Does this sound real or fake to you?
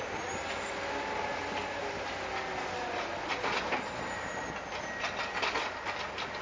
real